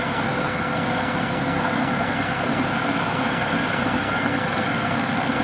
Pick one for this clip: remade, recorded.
remade